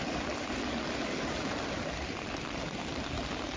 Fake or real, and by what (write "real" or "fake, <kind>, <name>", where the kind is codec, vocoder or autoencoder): real